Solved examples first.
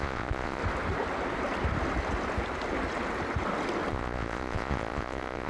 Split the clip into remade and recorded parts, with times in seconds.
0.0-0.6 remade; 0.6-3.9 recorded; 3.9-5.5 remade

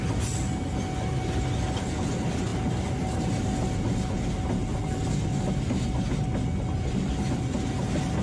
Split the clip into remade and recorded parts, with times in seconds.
0.0-8.2 recorded

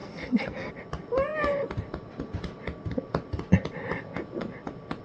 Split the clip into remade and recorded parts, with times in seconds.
0.0-0.7 remade; 0.7-5.0 recorded

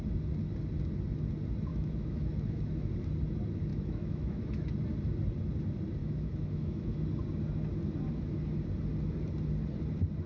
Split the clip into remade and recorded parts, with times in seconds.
0.0-1.7 recorded; 1.7-2.9 remade; 2.9-3.7 recorded; 3.7-4.7 remade; 4.7-6.0 recorded; 6.0-7.1 remade; 7.1-10.3 recorded